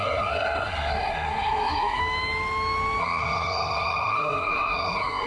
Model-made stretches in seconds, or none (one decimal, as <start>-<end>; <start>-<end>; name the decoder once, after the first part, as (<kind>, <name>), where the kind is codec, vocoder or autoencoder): 0.0-2.0 (codec, SNAC); 3.0-5.3